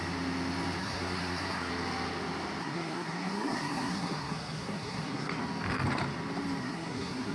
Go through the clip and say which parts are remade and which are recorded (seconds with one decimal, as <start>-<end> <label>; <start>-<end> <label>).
0.0-0.8 recorded; 0.8-1.7 remade; 1.7-2.6 recorded; 2.6-5.4 remade; 5.4-6.6 recorded; 6.6-7.3 remade